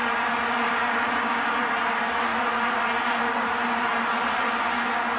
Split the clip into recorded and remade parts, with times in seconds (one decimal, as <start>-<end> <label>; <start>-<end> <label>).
0.0-5.2 recorded